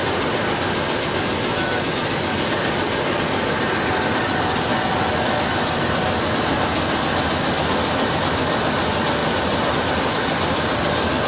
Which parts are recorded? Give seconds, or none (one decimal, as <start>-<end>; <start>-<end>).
0.0-11.3